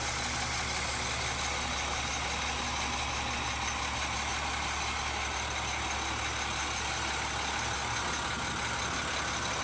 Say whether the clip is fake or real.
real